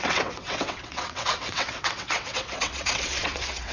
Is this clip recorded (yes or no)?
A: no